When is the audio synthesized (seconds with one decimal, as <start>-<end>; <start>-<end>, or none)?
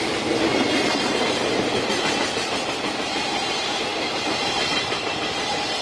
0.0-0.5; 2.7-5.8